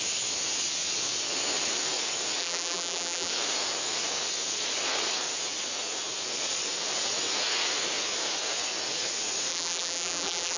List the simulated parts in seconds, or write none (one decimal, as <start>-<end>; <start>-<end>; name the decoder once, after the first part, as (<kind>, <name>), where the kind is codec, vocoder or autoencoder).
2.4-3.3 (vocoder, BigVGAN v2); 9.5-10.6